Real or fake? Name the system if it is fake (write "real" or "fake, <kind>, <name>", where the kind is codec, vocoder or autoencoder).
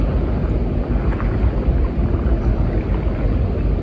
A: real